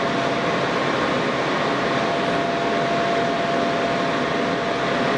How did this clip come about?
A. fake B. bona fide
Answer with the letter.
B